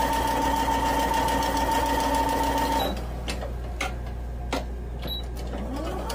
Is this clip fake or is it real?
real